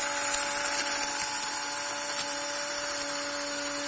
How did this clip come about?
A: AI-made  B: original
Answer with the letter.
B